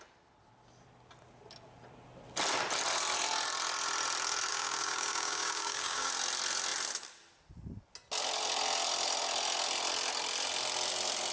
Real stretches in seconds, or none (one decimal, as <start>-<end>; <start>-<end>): 0.0-4.5; 6.1-11.3